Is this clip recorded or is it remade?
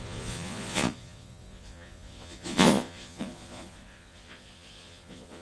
remade